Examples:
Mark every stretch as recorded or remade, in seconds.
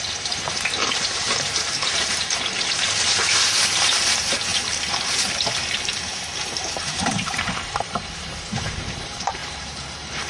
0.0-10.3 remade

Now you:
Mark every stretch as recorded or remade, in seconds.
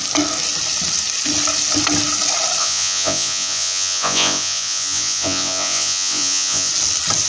0.0-2.6 recorded; 2.6-6.7 remade; 6.7-7.3 recorded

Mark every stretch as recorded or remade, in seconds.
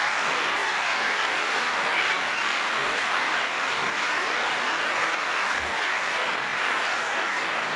0.0-7.8 remade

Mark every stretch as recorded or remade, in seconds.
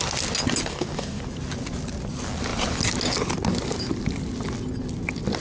0.0-0.7 recorded; 0.7-1.2 remade; 1.2-5.4 recorded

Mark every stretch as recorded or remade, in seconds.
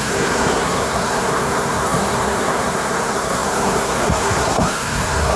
0.0-5.4 remade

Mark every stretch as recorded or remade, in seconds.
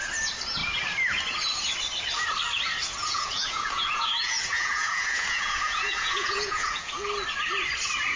0.0-3.0 recorded; 3.0-6.9 remade; 6.9-8.2 recorded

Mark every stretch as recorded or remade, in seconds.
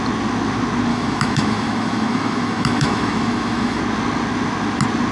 0.0-0.9 recorded; 0.9-3.8 remade; 3.8-5.1 recorded